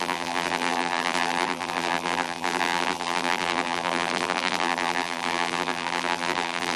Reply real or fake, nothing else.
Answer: fake